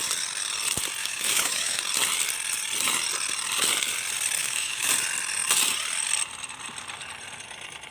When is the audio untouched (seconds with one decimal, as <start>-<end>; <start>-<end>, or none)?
0.0-1.0; 1.8-4.4; 4.9-7.9